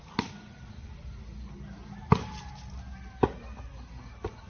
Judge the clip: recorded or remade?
recorded